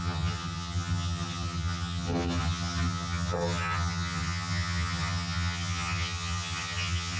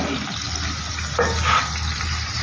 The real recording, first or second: second